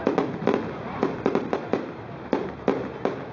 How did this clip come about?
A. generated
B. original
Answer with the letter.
B